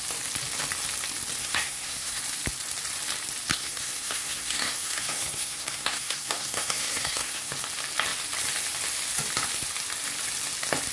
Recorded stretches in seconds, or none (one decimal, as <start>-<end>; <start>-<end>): 0.0-1.4; 2.2-3.5; 7.5-10.9